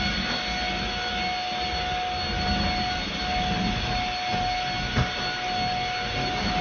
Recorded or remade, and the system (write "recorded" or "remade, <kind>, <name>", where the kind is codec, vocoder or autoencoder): recorded